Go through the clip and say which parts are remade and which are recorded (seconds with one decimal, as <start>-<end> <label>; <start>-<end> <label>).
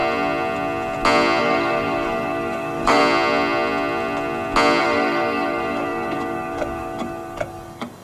0.0-1.4 recorded; 1.4-3.0 remade; 3.0-4.8 recorded; 4.8-8.0 remade